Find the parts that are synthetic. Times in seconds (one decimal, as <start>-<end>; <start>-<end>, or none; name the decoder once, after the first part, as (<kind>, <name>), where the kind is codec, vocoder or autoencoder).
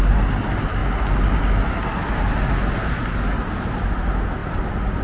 none